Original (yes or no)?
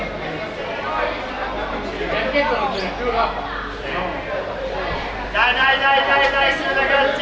yes